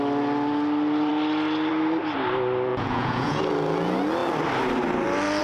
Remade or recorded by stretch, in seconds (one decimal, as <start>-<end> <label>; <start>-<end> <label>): 0.0-2.7 recorded; 2.7-3.4 remade; 3.4-5.4 recorded